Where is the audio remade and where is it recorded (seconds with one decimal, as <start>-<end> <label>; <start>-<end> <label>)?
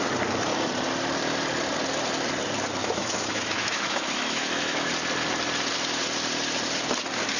0.0-2.8 recorded; 2.8-4.9 remade; 4.9-7.4 recorded